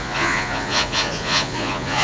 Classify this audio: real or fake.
fake